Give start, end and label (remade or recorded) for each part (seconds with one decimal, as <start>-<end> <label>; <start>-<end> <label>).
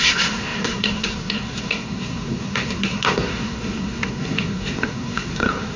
0.0-5.8 remade